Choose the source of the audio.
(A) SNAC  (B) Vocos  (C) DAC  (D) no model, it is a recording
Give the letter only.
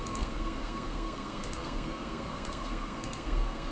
A